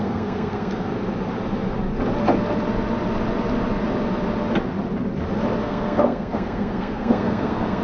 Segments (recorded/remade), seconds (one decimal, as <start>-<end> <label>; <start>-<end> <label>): 0.0-0.9 remade; 0.9-5.6 recorded; 5.6-7.8 remade